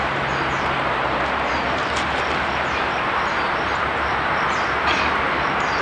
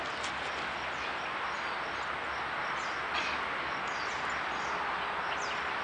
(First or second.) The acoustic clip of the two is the second